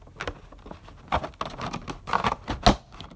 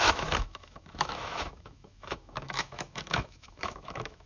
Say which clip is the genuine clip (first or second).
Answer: first